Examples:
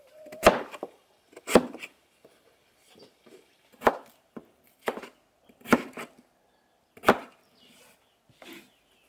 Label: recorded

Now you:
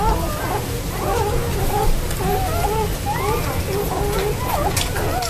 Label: recorded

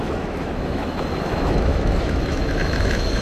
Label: remade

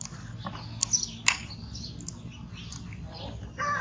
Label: recorded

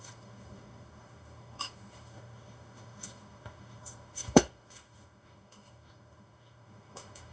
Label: remade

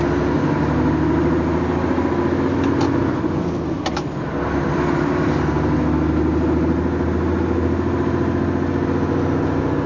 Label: recorded